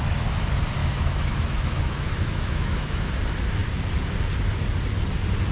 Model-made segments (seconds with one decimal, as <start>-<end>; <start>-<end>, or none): 0.8-3.1